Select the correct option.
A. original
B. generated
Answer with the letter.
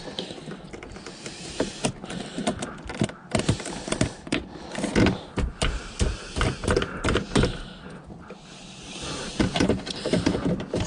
A